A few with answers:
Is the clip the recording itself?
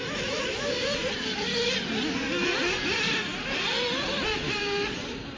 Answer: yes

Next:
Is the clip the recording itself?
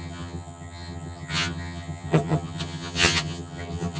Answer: no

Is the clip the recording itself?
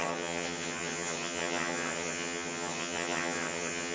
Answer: no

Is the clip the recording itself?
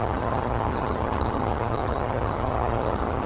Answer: no